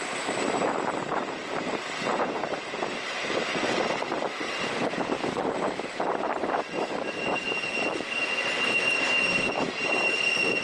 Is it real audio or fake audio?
fake